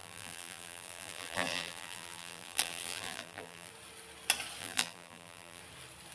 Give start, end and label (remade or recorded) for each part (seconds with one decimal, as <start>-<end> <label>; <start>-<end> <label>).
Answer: 0.0-3.7 remade; 3.7-4.6 recorded; 4.6-5.6 remade; 5.6-6.1 recorded